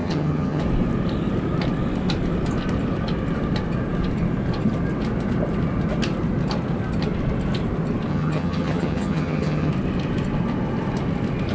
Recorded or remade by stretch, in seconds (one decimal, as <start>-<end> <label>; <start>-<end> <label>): 0.0-0.6 remade; 0.6-8.1 recorded; 8.1-9.7 remade; 9.7-11.5 recorded